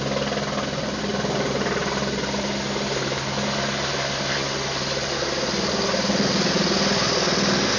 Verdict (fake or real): real